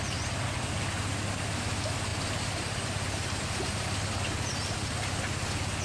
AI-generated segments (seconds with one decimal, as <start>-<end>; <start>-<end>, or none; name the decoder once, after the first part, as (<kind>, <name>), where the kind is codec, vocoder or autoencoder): none